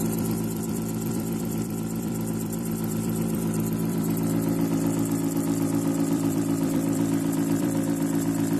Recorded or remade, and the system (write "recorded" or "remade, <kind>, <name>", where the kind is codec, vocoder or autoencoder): remade, vocoder, BigVGAN v2